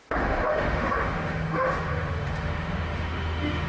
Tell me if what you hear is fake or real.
fake